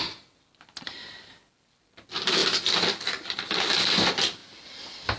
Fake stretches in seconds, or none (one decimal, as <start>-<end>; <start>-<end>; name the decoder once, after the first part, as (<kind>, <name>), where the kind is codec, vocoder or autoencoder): none